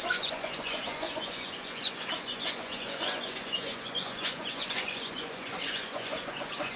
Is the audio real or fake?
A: fake